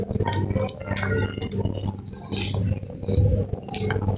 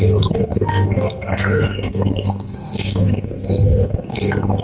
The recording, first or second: first